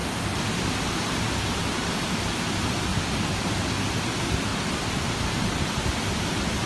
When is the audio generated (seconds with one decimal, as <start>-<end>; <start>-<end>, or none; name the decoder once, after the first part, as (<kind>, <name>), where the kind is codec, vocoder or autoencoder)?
4.5-5.3 (vocoder, BigVGAN v2)